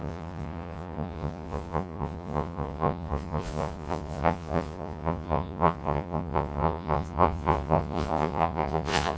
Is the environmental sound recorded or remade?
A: remade